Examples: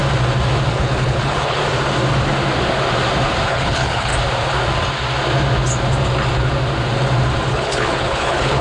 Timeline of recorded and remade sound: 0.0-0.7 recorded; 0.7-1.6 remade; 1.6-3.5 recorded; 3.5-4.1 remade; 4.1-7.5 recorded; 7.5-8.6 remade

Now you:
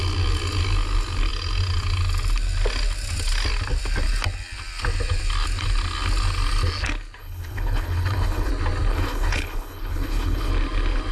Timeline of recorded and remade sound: 0.0-7.2 recorded; 7.2-8.5 remade; 8.5-8.9 recorded; 8.9-10.5 remade; 10.5-11.1 recorded

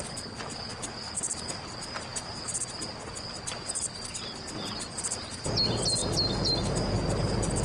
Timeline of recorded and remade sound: 0.0-7.6 recorded

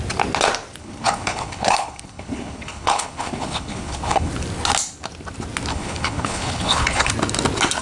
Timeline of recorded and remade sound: 0.0-0.8 recorded; 0.8-4.3 remade; 4.3-5.7 recorded; 5.7-7.1 remade; 7.1-7.8 recorded

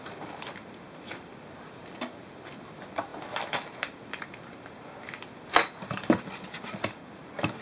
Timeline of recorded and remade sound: 0.0-7.6 recorded

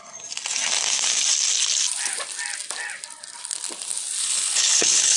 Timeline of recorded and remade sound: 0.0-4.2 recorded; 4.2-5.2 remade

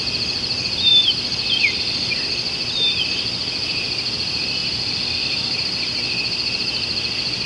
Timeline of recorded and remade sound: 0.0-7.5 recorded